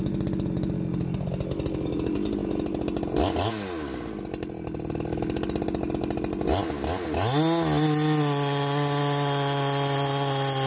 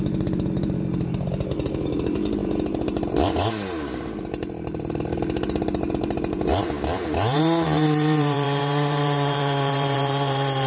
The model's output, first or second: second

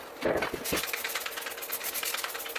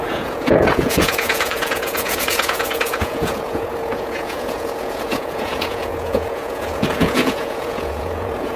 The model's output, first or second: second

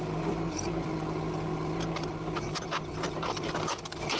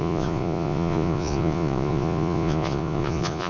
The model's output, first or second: second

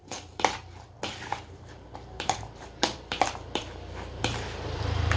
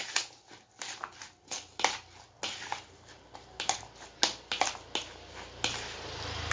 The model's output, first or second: first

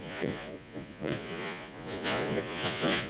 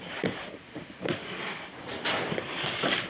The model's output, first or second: first